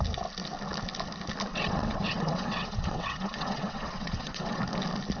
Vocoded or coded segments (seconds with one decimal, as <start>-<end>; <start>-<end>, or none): 1.5-4.6